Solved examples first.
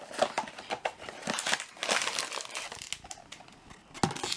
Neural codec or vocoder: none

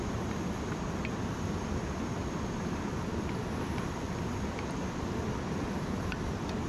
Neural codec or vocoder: none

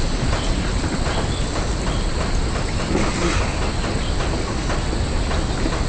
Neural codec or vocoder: none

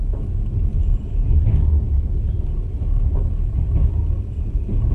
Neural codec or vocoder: none